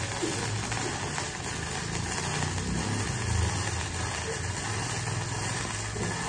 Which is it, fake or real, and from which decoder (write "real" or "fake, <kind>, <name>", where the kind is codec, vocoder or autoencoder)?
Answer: real